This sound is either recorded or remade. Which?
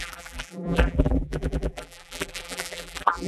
remade